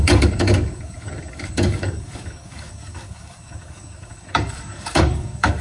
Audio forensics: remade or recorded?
remade